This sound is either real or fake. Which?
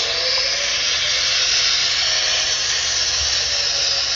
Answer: real